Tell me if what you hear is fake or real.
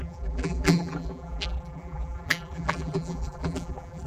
fake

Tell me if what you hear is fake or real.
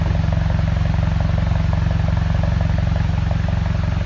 real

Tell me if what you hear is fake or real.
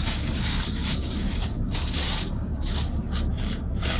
fake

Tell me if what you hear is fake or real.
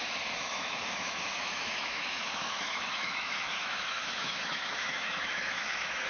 fake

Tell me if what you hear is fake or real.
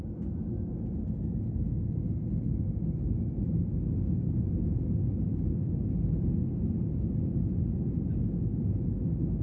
real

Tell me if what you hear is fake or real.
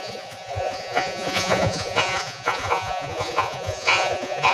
fake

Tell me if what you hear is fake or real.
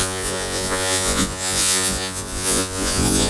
fake